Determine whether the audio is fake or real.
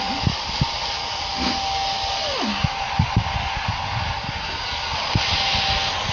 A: real